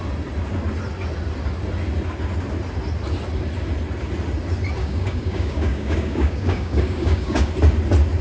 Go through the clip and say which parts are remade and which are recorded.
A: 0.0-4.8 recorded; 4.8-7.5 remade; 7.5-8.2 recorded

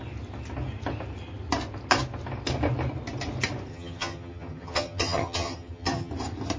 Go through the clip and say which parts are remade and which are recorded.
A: 0.0-3.7 recorded; 3.7-6.1 remade; 6.1-6.6 recorded

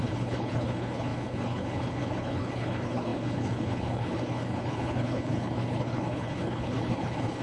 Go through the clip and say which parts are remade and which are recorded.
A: 0.0-7.4 remade

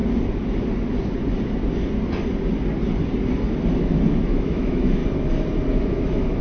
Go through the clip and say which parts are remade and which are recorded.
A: 0.0-3.8 recorded; 3.8-5.0 remade; 5.0-5.7 recorded; 5.7-6.4 remade

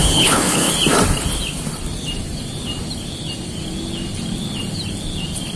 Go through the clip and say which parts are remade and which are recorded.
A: 0.0-0.7 remade; 0.7-5.6 recorded